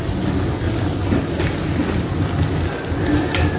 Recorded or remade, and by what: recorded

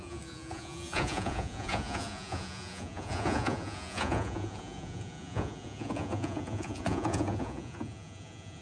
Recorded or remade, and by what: remade, vocoder, Vocos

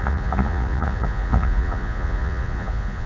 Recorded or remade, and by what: remade, vocoder, Vocos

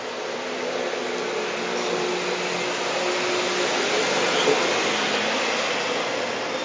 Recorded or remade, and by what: recorded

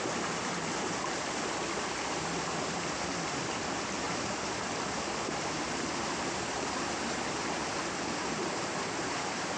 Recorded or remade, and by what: recorded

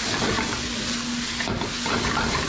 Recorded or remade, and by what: recorded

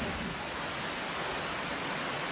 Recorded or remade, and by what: recorded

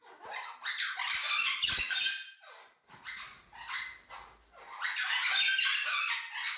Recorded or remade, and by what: recorded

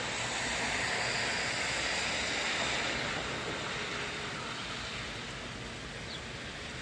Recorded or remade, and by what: recorded